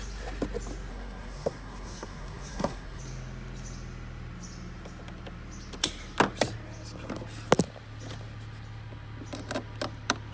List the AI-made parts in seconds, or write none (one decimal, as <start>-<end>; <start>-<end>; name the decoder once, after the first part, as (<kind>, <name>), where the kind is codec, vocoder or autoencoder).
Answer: 0.9-3.0 (codec, SNAC)